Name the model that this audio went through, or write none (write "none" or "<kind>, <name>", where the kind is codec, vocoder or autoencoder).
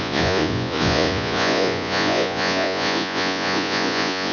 vocoder, Vocos